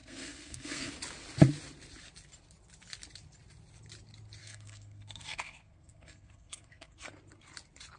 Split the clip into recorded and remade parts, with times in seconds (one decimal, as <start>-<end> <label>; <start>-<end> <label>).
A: 0.0-0.9 remade; 0.9-4.4 recorded; 4.4-7.1 remade; 7.1-8.0 recorded